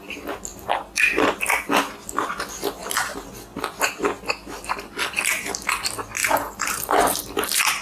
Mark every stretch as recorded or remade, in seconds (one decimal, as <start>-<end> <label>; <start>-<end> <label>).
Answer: 0.0-0.5 recorded; 0.5-1.6 remade; 1.6-2.8 recorded; 2.8-3.3 remade; 3.3-6.2 recorded; 6.2-7.8 remade